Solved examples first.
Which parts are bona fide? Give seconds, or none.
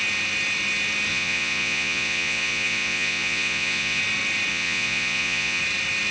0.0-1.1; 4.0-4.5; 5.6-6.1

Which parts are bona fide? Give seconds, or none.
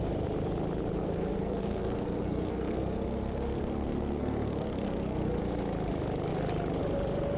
0.0-1.0; 5.4-7.4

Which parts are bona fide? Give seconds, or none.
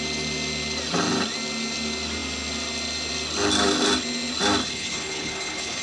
0.0-4.6